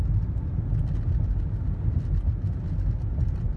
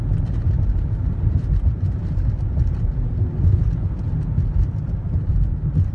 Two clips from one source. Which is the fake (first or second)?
second